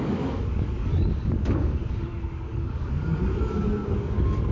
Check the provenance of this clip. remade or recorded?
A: remade